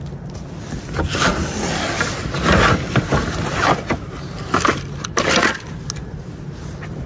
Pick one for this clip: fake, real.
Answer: real